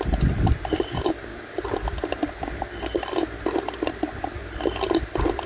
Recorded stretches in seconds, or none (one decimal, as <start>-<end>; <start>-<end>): 0.0-5.5